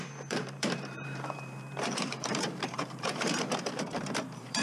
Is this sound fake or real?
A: fake